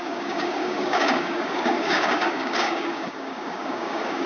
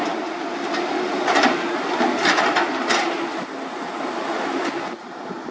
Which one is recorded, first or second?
second